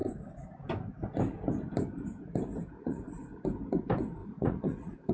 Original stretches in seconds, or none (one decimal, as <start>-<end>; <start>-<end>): 0.0-2.8; 3.4-4.2

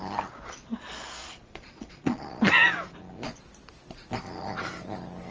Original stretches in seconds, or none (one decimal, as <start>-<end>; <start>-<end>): 0.0-1.2; 2.5-5.3

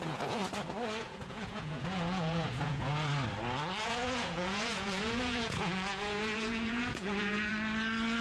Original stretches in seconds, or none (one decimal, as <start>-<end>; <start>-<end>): 0.4-1.0; 2.9-3.8; 7.5-8.2

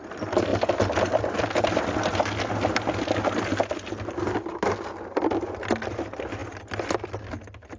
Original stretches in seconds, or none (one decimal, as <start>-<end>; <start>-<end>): 0.0-7.8

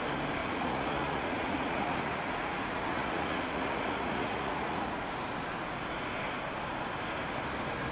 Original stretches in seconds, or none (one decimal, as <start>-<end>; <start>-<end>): 0.0-0.4; 5.1-7.9